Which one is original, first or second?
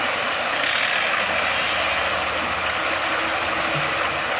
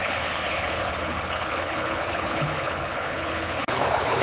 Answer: first